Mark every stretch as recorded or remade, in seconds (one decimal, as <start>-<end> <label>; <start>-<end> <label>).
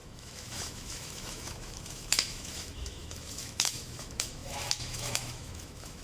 0.0-6.0 remade